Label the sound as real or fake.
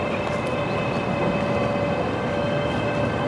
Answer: real